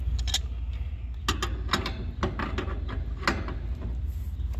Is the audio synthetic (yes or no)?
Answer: no